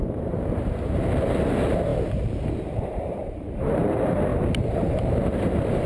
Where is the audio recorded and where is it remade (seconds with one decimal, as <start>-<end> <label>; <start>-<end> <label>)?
0.0-5.9 remade